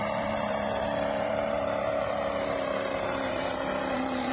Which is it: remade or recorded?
remade